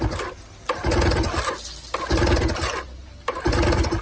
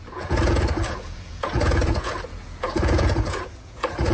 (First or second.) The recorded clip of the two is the first